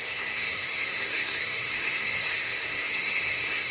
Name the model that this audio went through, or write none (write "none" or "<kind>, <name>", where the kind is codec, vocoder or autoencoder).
codec, SNAC